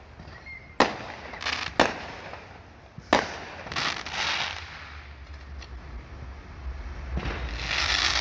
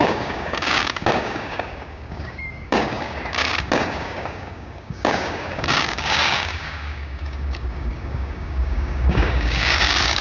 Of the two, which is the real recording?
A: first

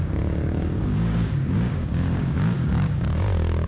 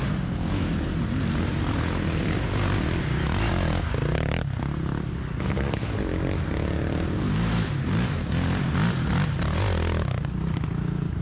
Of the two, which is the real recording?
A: second